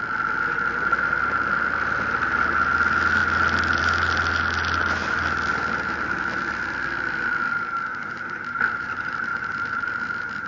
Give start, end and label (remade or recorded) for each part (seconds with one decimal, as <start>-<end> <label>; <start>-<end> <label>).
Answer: 0.0-10.5 recorded